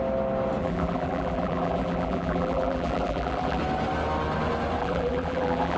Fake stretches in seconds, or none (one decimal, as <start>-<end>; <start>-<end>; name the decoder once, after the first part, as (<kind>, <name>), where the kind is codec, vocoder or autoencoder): 0.6-3.6 (vocoder, BigVGAN v2); 4.8-5.8